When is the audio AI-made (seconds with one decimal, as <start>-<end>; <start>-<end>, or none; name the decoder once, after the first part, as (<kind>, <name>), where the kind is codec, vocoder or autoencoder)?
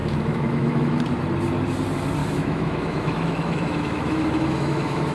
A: 0.0-1.0 (autoencoder, DAC-VAE); 2.2-5.1